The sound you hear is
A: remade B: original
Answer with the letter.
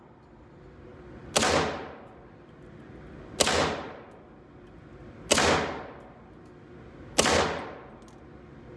B